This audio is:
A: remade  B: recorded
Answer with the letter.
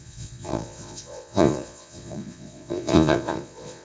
A